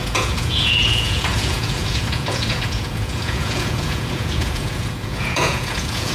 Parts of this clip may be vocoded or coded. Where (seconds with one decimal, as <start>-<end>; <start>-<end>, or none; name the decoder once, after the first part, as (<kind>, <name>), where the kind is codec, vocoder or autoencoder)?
0.0-6.1 (vocoder, Vocos)